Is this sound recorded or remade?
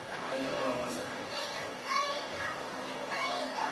remade